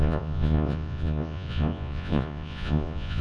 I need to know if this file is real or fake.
fake